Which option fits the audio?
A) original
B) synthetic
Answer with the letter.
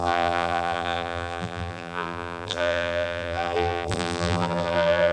B